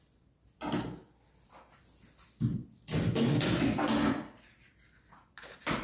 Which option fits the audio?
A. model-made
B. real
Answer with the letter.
B